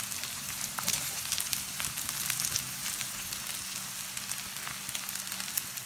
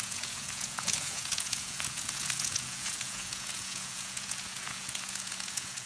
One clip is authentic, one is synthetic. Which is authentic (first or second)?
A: first